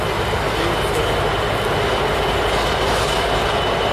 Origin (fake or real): real